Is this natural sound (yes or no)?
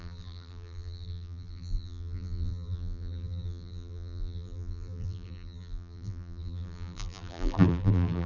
no